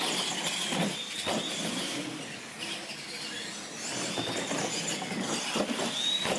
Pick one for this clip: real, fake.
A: real